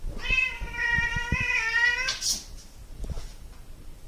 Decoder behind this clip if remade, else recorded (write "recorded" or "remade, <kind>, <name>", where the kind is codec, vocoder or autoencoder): recorded